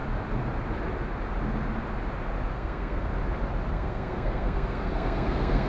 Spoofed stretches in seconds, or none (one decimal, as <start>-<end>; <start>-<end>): 2.5-3.1; 3.7-5.7